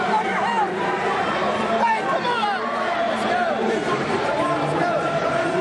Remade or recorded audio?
remade